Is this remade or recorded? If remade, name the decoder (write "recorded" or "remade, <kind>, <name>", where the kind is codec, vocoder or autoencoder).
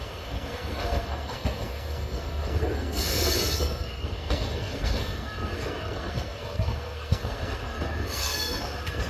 remade, codec, SNAC